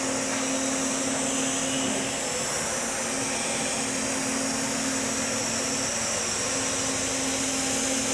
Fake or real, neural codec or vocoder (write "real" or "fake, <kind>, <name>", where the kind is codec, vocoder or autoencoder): real